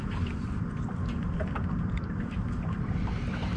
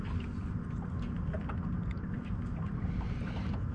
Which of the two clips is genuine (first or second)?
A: second